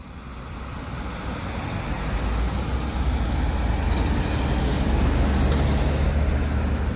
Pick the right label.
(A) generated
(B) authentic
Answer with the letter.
B